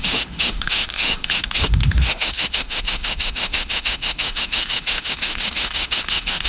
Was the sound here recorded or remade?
remade